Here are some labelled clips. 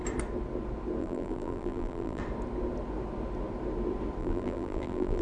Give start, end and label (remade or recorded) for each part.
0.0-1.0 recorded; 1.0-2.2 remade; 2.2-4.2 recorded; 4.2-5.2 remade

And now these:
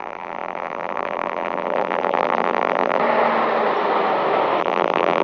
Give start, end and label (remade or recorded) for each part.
0.0-3.0 remade; 3.0-4.6 recorded; 4.6-5.2 remade

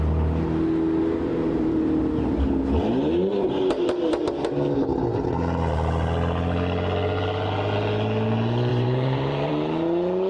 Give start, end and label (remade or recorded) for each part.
0.0-1.3 recorded; 1.3-1.8 remade; 1.8-3.3 recorded; 3.3-4.3 remade; 4.3-8.7 recorded; 8.7-9.5 remade; 9.5-10.3 recorded

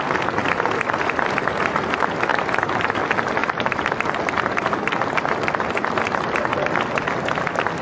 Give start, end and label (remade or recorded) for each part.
0.0-3.4 recorded; 3.4-4.2 remade; 4.2-6.5 recorded; 6.5-7.8 remade

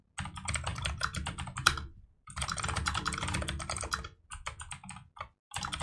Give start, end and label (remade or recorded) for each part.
0.0-0.7 recorded; 0.7-4.2 remade; 4.2-5.8 recorded

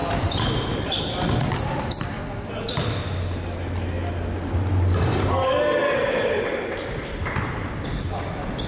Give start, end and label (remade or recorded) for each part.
0.0-1.0 remade; 1.0-8.7 recorded